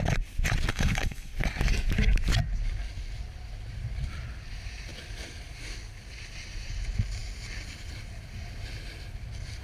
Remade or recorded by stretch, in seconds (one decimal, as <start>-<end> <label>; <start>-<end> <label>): 0.0-0.7 recorded; 0.7-1.3 remade; 1.3-9.6 recorded